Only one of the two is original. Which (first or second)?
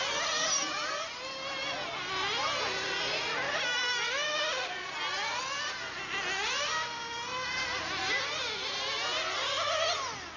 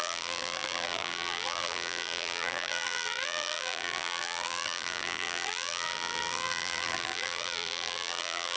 first